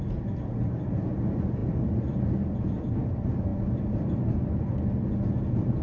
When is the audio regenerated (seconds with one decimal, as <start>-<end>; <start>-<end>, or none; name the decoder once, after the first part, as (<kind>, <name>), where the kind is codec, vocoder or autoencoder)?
none